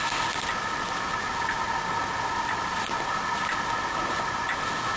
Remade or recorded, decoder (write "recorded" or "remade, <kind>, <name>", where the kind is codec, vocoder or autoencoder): recorded